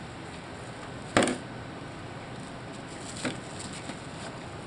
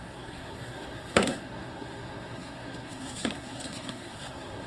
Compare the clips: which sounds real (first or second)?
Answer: first